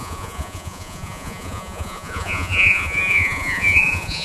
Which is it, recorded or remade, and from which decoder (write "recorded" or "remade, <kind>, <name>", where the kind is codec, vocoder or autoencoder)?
remade, vocoder, Vocos